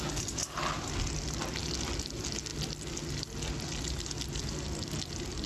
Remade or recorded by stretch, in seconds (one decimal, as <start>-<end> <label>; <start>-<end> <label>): 0.0-5.5 recorded